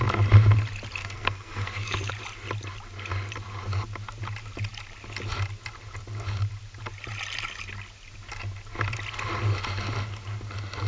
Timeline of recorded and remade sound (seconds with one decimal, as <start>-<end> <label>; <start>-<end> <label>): 0.0-1.0 recorded; 1.0-2.1 remade; 2.1-10.9 recorded